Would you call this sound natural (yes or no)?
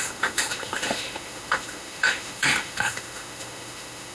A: no